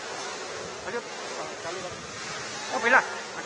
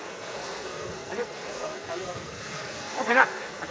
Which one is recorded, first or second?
first